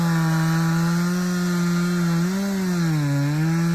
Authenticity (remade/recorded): recorded